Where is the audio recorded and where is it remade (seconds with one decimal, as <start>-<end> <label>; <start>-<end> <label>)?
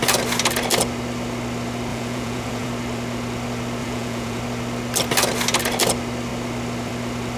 0.0-1.9 recorded; 1.9-2.7 remade; 2.7-3.8 recorded; 3.8-4.4 remade; 4.4-7.4 recorded